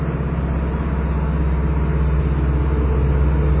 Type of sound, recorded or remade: recorded